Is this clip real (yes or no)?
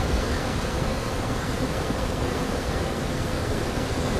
no